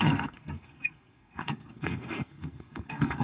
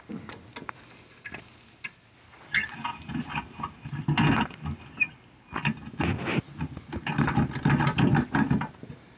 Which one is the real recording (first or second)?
second